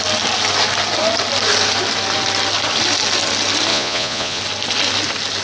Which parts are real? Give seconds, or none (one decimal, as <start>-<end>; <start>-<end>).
0.0-3.7; 4.4-5.4